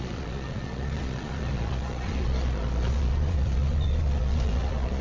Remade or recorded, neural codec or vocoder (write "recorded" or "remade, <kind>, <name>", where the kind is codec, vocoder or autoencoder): remade, vocoder, Vocos